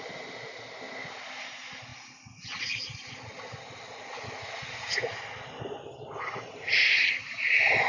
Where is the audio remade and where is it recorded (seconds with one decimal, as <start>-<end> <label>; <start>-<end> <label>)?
0.0-7.9 recorded